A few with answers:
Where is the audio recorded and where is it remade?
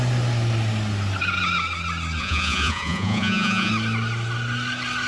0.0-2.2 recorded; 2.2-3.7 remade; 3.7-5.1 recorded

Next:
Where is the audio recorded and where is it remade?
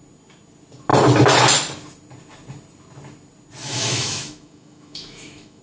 0.0-3.6 recorded; 3.6-5.6 remade